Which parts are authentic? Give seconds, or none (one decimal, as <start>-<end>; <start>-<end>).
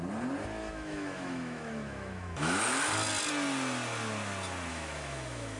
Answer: 0.0-0.6; 2.6-4.7